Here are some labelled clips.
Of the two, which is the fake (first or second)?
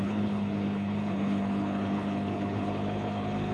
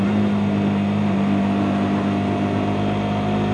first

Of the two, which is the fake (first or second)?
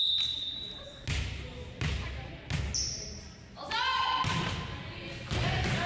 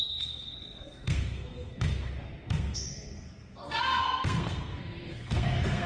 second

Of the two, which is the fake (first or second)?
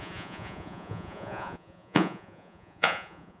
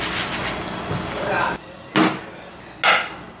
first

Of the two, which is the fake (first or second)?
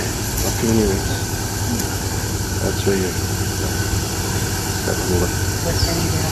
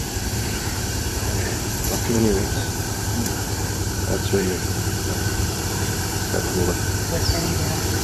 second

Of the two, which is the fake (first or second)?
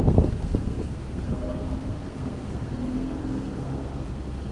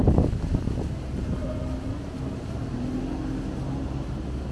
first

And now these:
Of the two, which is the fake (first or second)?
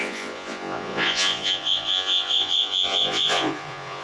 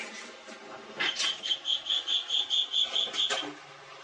first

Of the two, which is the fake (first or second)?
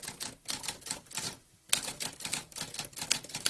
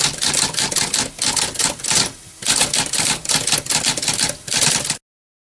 first